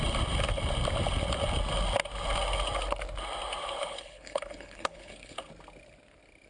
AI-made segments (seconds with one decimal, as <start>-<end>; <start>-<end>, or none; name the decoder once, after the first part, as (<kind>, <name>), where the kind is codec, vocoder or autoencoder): 3.6-5.5 (codec, HILCodec)